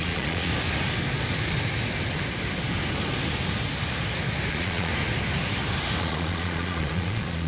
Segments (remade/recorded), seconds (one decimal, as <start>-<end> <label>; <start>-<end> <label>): 0.0-0.5 remade; 0.5-4.5 recorded; 4.5-4.9 remade; 4.9-6.0 recorded; 6.0-7.5 remade